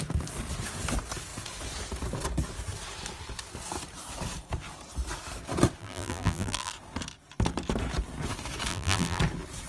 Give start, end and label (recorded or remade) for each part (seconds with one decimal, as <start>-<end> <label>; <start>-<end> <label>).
0.0-5.8 recorded; 5.8-6.7 remade; 6.7-8.7 recorded; 8.7-9.2 remade; 9.2-9.7 recorded